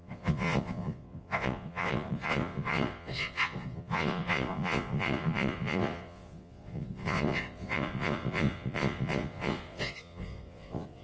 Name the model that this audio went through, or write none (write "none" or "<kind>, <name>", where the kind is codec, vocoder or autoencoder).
vocoder, Vocos